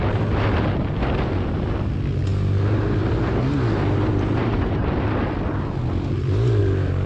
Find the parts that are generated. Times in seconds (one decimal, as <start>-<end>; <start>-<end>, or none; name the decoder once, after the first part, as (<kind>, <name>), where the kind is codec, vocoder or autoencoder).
none